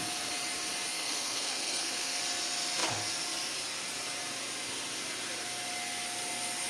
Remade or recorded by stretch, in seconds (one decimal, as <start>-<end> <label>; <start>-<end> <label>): 0.0-0.9 recorded; 0.9-2.2 remade; 2.2-6.7 recorded